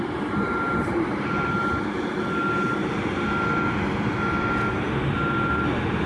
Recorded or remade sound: recorded